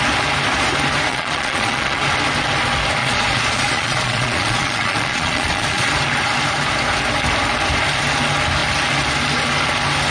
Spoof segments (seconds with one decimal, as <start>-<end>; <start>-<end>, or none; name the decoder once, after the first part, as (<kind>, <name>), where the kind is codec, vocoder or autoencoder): 1.1-2.0 (vocoder, Vocos); 3.0-5.9